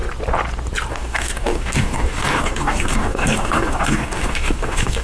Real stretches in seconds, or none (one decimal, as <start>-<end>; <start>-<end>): 0.0-0.9